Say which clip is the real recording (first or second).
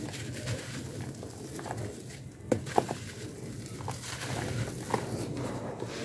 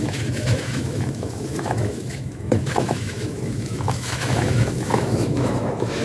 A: first